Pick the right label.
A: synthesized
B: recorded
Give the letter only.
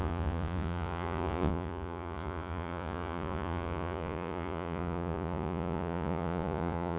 A